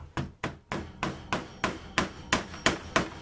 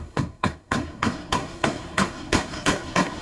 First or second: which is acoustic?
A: first